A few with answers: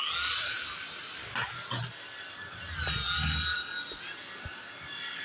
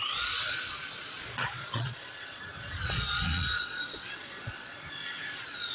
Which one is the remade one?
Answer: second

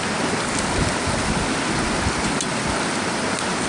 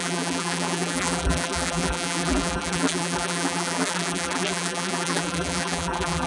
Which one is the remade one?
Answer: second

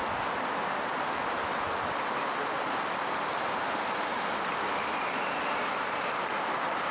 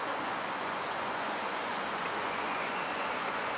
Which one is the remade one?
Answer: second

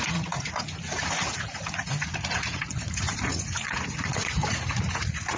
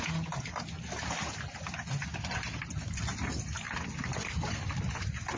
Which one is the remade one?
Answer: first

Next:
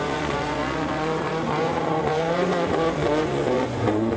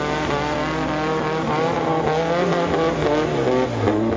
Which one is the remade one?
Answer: first